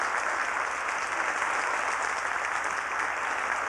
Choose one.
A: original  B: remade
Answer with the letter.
A